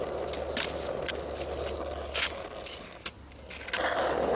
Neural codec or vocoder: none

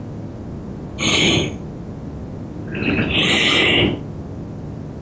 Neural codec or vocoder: none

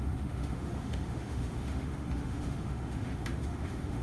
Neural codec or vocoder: autoencoder, DAC-VAE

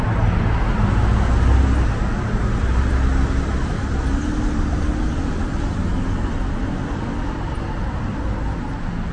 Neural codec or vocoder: none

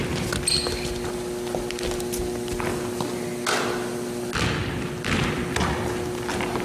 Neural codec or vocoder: none